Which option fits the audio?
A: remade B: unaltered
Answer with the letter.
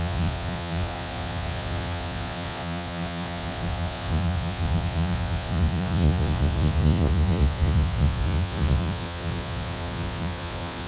A